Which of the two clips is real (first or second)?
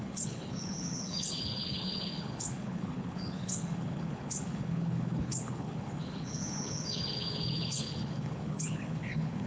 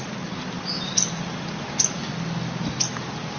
second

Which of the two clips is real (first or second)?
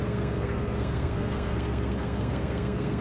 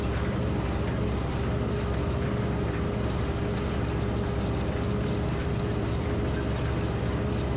second